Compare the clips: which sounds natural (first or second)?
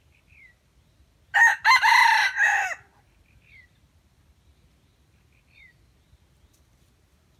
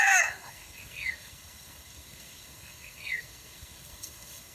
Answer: first